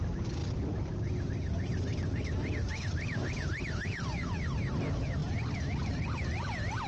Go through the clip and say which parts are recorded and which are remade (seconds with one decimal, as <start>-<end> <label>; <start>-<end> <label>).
0.0-5.2 remade; 5.2-5.8 recorded; 5.8-6.9 remade